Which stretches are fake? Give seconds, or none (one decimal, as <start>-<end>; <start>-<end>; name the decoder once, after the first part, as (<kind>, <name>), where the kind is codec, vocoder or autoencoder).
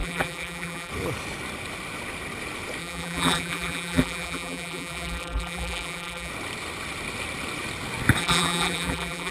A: 0.0-0.9 (vocoder, BigVGAN v2); 2.8-6.3; 8.2-9.3